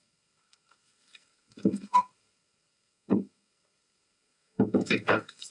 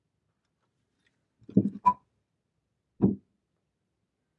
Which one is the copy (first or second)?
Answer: first